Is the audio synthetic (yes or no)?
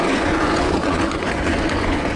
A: yes